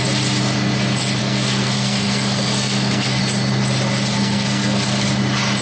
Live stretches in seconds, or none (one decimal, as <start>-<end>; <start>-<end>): 0.0-1.2; 3.2-4.1; 5.1-5.6